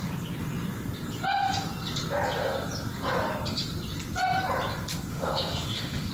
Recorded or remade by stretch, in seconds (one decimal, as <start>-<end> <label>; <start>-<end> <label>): 0.0-5.1 recorded; 5.1-6.1 remade